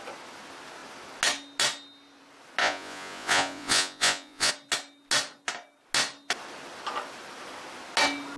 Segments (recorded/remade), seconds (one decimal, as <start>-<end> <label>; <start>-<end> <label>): 0.0-2.6 recorded; 2.6-4.5 remade; 4.5-8.4 recorded